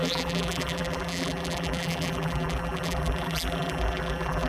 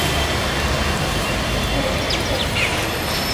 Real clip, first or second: second